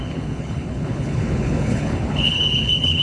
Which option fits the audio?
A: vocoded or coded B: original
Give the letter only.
A